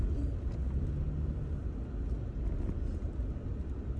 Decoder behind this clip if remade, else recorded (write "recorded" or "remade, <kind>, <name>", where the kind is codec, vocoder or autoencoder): recorded